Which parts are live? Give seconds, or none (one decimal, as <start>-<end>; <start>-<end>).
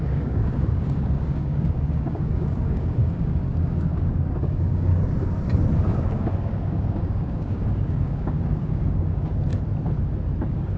4.9-5.9; 9.5-10.4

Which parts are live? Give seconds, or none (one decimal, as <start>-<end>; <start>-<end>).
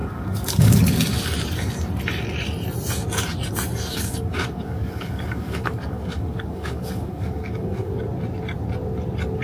0.8-3.9; 8.0-9.4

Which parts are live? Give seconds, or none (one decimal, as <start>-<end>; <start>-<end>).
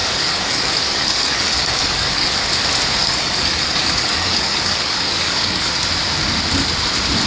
2.5-3.0; 5.7-7.3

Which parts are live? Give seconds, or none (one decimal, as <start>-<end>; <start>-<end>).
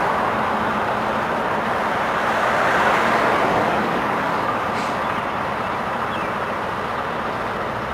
0.0-3.5; 4.7-7.9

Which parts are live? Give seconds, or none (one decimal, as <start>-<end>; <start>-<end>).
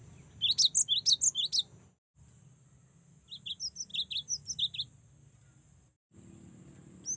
0.0-7.2